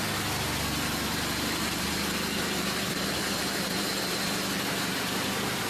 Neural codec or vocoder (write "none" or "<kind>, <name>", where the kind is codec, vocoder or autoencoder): none